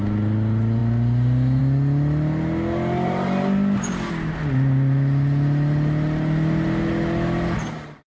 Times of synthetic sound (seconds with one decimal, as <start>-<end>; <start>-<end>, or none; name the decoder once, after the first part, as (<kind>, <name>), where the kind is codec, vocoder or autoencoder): none